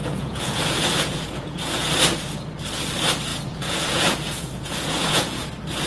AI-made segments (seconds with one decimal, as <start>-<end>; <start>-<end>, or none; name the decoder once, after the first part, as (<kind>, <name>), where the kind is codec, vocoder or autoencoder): 0.0-1.9 (vocoder, Vocos); 3.3-5.5